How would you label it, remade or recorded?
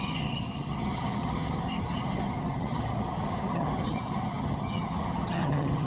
remade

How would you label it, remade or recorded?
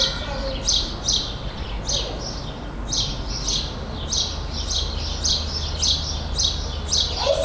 recorded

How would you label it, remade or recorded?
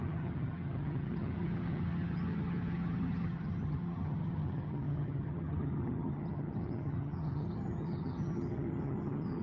remade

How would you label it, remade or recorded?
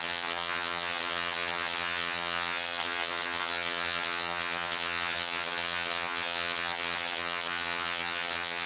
remade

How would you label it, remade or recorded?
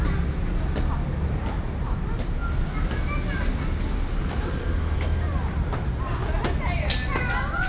recorded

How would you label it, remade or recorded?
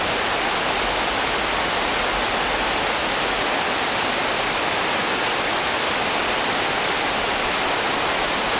recorded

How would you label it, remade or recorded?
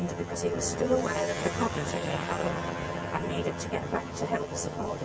remade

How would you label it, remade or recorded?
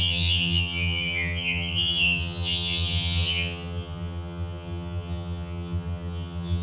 remade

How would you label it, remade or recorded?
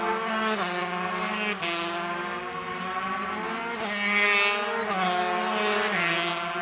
recorded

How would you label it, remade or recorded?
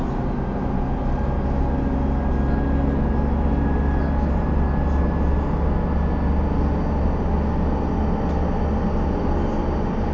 recorded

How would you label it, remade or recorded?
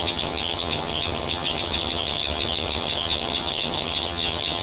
remade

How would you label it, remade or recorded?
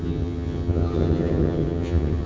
remade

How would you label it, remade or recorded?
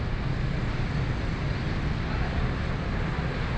recorded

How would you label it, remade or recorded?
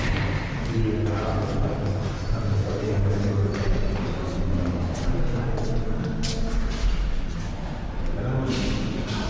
recorded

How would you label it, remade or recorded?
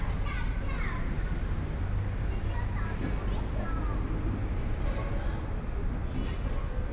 recorded